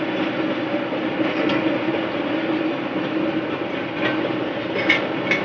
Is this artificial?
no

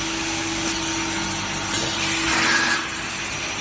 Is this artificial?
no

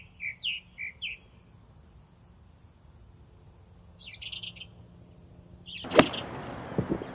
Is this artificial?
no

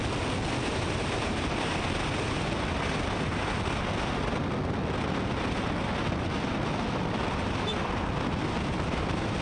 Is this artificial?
no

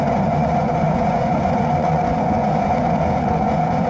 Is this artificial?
yes